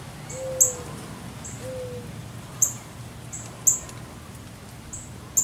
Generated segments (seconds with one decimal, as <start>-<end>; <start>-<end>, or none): 2.2-3.1